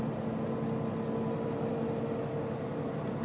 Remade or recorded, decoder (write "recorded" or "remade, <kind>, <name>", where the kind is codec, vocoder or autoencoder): recorded